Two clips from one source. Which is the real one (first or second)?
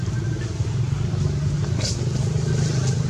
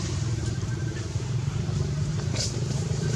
first